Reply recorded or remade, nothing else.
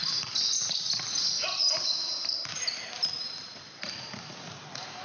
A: remade